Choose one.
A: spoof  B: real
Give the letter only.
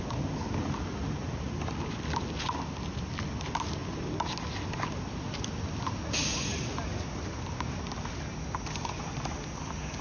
B